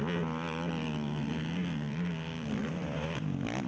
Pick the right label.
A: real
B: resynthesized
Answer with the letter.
A